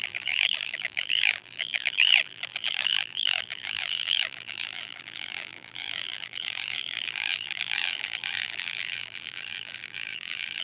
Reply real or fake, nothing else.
fake